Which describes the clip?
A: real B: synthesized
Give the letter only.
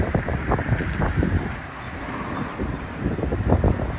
B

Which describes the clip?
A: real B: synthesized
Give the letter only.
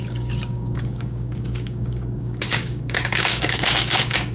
B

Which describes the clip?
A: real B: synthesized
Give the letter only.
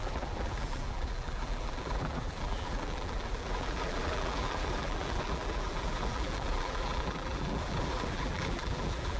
B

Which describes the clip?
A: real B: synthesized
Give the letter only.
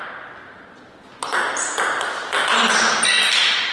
A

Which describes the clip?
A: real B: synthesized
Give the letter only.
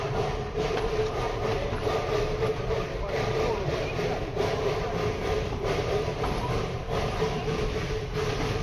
B